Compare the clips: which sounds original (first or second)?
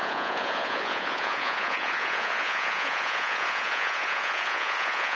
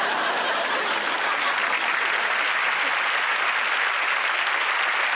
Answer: second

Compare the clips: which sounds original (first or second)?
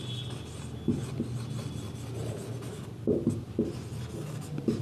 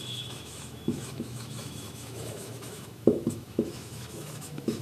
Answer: first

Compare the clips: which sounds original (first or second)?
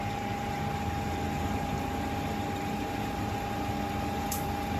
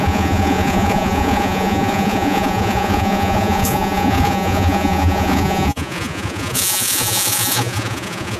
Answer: first